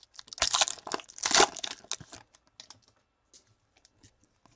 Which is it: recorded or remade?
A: recorded